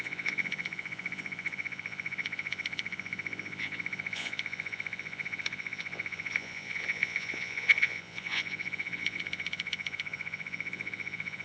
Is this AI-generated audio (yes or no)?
yes